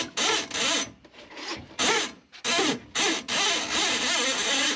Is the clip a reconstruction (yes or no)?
no